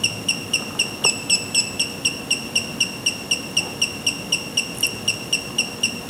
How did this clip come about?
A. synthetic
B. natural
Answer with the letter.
B